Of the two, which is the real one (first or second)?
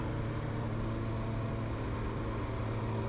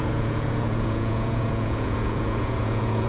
first